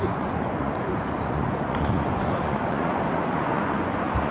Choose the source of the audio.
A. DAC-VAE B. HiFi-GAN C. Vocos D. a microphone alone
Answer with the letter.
C